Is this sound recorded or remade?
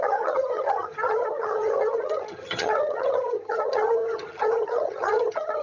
remade